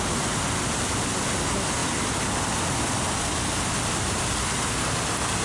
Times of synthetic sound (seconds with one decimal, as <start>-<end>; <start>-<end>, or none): none